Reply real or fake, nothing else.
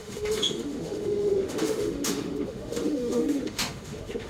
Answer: fake